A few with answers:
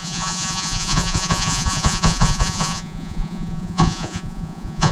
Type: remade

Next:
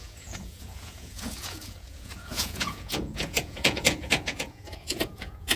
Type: remade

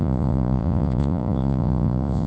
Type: remade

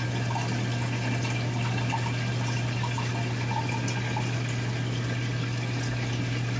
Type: recorded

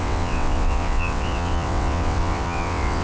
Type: remade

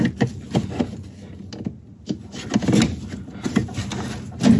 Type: recorded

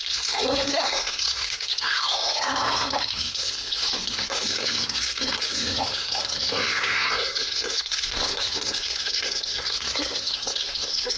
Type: remade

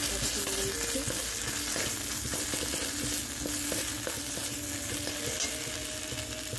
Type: recorded